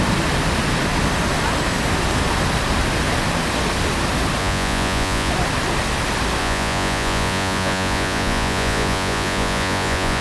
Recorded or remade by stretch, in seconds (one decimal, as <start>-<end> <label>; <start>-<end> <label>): 0.0-4.4 recorded; 4.4-5.3 remade; 5.3-6.4 recorded; 6.4-10.2 remade